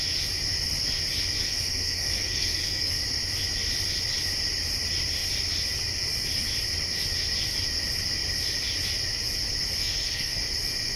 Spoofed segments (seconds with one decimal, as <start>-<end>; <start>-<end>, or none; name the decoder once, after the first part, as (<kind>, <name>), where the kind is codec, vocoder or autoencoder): 1.4-3.0 (codec, SNAC); 9.8-10.4